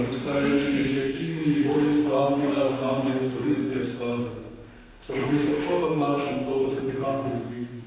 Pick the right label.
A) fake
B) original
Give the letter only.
A